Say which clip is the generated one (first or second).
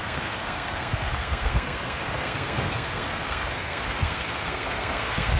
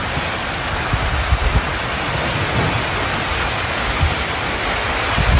first